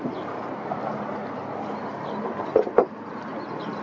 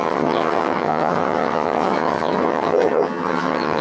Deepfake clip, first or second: second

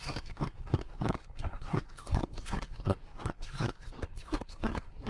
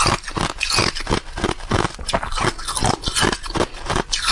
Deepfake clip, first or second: first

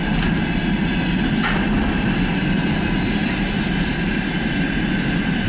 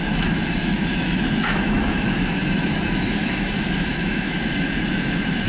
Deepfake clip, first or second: second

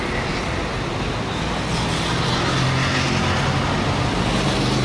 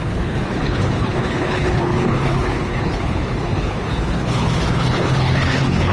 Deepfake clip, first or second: second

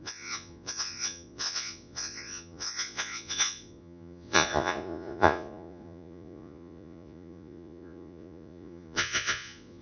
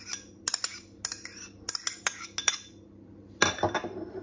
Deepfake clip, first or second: first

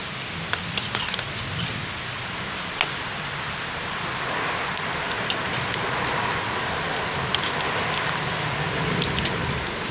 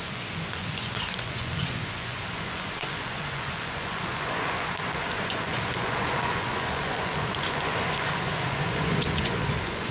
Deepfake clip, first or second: second